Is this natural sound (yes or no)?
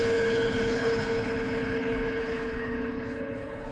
no